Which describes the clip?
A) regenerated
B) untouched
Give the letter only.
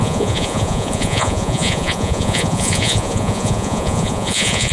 A